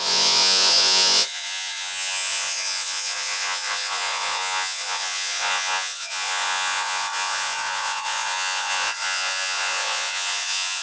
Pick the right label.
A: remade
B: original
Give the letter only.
A